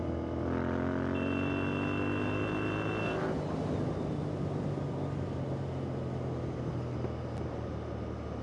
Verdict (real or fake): real